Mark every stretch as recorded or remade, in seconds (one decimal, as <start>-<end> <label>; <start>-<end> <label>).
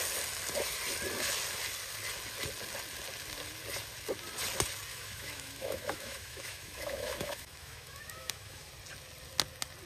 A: 0.0-4.9 recorded; 4.9-8.7 remade; 8.7-9.9 recorded